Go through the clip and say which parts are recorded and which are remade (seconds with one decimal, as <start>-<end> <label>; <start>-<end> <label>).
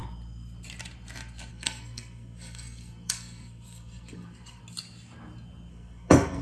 0.0-1.5 recorded; 1.5-4.6 remade; 4.6-5.7 recorded; 5.7-6.4 remade